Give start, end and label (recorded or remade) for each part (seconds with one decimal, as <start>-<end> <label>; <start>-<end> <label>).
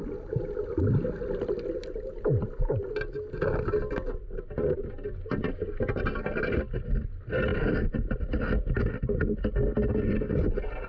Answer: 0.0-10.9 recorded